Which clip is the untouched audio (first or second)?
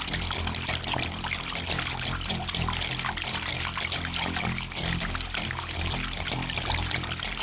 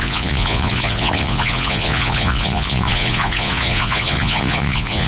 first